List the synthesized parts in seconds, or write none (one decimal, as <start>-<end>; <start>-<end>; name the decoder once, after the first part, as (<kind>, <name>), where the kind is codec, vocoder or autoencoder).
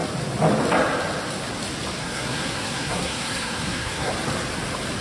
2.0-4.1 (codec, SNAC)